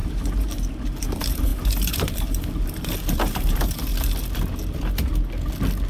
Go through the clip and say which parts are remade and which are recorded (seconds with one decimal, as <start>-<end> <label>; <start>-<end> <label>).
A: 0.0-3.9 remade; 3.9-5.9 recorded